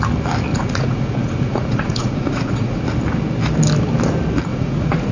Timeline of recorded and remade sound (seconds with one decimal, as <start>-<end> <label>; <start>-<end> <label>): 0.0-0.5 recorded; 0.5-2.8 remade; 2.8-4.5 recorded; 4.5-5.1 remade